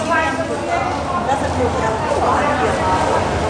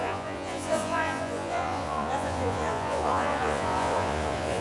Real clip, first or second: first